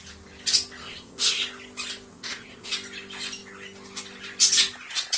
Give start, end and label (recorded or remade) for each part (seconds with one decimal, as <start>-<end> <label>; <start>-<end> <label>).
0.0-0.8 recorded; 0.8-1.4 remade; 1.4-2.1 recorded; 2.1-2.7 remade; 2.7-5.2 recorded